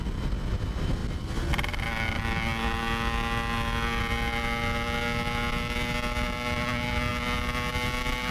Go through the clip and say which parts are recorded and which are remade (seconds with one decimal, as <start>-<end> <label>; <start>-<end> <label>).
0.0-8.3 recorded